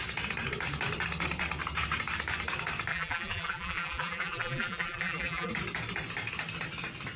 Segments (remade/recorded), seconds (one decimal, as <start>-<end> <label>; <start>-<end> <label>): 0.0-2.9 recorded; 2.9-5.5 remade; 5.5-7.2 recorded